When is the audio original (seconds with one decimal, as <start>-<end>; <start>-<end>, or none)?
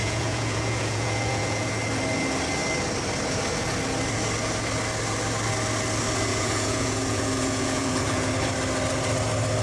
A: 1.7-6.3; 8.3-9.6